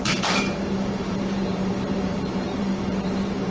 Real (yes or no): no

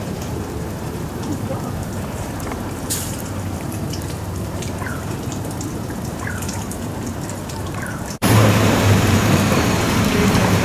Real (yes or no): no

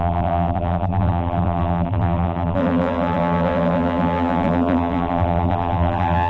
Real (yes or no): no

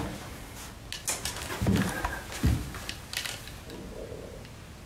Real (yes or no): yes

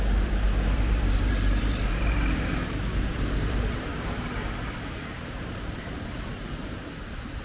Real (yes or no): no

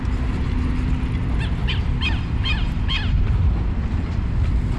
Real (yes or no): yes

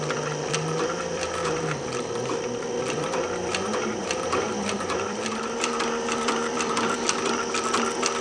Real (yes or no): no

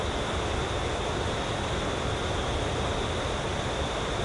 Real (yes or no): no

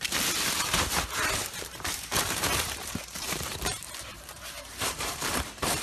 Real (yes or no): no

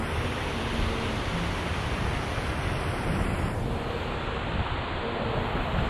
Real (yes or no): yes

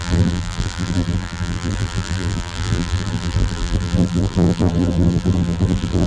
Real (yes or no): no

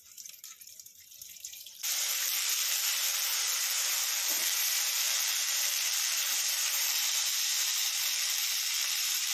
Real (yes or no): no